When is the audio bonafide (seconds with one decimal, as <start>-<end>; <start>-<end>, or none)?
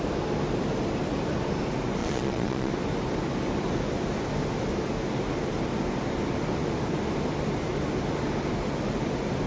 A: 0.0-2.0; 2.7-9.5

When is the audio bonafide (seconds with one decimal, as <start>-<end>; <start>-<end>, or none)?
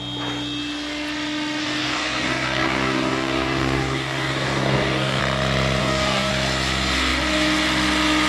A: 0.0-1.6; 5.2-5.8; 6.3-8.3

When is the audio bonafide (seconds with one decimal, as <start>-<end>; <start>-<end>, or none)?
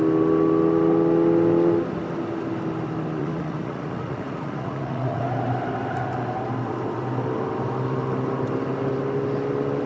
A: 0.0-3.2; 5.2-9.9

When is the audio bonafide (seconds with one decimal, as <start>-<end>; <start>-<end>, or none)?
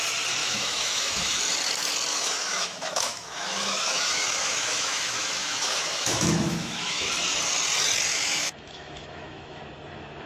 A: 0.0-0.4; 1.4-2.1; 7.1-8.1; 9.6-10.3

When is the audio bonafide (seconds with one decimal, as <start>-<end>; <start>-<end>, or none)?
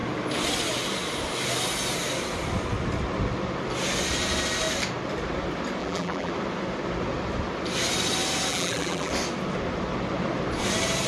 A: 0.0-5.8; 6.3-8.5; 9.1-11.1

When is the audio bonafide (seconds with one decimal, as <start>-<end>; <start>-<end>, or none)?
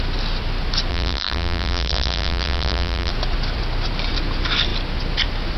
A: 0.0-0.9; 3.1-5.6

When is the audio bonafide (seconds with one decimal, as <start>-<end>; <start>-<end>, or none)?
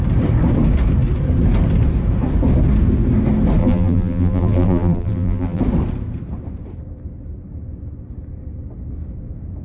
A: 0.0-3.6; 5.6-9.6